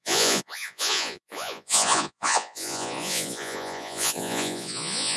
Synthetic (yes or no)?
yes